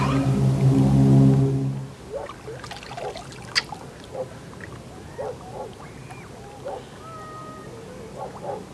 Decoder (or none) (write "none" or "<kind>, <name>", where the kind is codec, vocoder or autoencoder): none